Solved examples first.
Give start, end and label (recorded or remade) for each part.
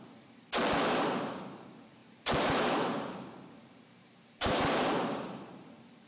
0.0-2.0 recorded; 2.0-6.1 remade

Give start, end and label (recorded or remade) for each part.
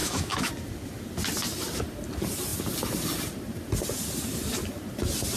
0.0-0.5 remade; 0.5-5.4 recorded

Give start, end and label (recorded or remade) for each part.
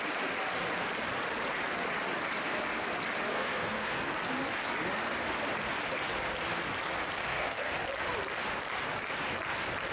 0.0-3.3 recorded; 3.3-4.0 remade; 4.0-7.2 recorded; 7.2-7.7 remade; 7.7-9.9 recorded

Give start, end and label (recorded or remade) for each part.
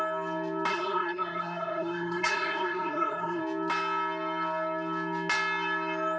0.0-0.7 recorded; 0.7-3.4 remade; 3.4-6.2 recorded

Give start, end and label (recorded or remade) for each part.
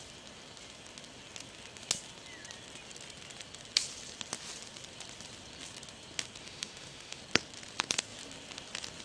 0.0-6.4 recorded; 6.4-7.2 remade; 7.2-9.0 recorded